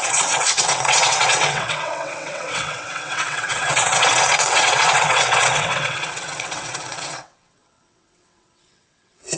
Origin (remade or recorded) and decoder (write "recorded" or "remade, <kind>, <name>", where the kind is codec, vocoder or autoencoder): remade, vocoder, WaveNeXt